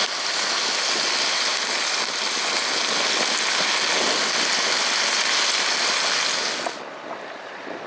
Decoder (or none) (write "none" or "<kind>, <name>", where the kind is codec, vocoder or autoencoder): none